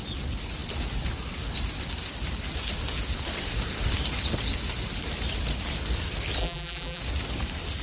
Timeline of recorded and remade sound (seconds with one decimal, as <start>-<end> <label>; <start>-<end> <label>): 0.0-6.4 recorded; 6.4-7.0 remade; 7.0-7.8 recorded